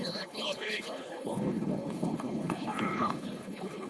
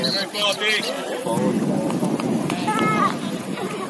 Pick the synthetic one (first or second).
first